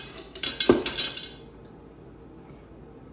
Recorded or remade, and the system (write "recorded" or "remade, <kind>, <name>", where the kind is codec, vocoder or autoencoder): recorded